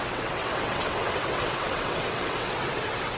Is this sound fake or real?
fake